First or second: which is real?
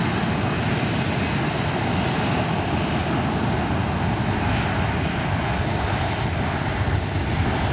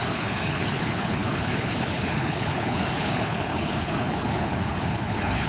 first